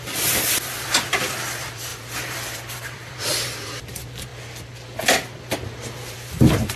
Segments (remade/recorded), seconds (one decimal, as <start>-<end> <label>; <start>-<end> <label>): 0.0-4.3 remade; 4.3-5.0 recorded; 5.0-6.8 remade